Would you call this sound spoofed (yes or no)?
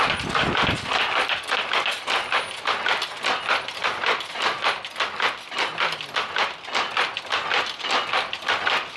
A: no